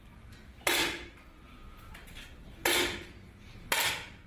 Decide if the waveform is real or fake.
real